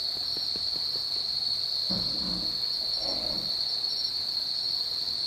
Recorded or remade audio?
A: recorded